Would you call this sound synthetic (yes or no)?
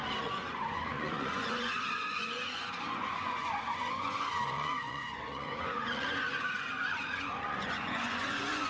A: yes